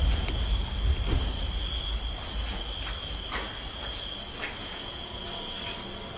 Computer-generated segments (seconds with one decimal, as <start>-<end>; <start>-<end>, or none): 4.6-5.2